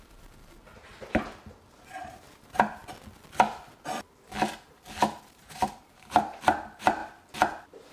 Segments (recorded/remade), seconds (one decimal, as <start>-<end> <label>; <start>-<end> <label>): 0.0-0.9 remade; 0.9-1.9 recorded; 1.9-2.8 remade; 2.8-5.2 recorded; 5.2-7.0 remade; 7.0-7.9 recorded